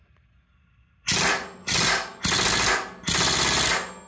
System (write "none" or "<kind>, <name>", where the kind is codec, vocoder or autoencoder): none